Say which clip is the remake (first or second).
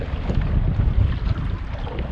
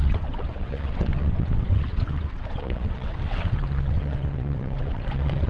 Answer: second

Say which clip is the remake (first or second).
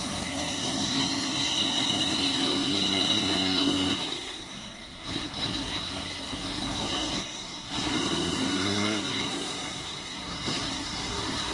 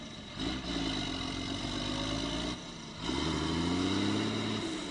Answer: first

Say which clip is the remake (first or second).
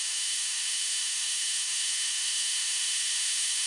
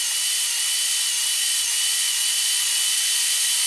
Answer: first